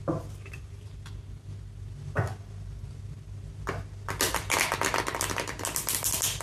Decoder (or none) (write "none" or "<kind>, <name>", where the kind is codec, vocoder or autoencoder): none